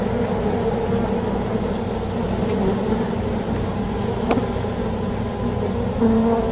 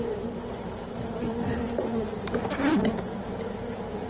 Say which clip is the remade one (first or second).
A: second